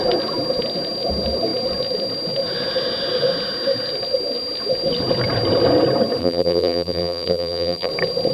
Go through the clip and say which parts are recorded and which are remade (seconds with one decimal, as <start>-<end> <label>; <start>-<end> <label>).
0.0-6.2 recorded; 6.2-7.9 remade; 7.9-8.3 recorded